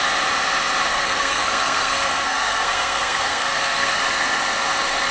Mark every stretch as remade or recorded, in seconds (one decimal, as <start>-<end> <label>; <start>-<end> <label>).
0.0-0.9 recorded; 0.9-4.0 remade; 4.0-5.1 recorded